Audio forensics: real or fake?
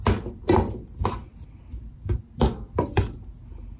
real